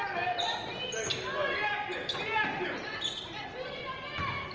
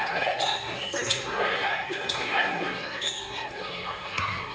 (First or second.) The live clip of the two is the first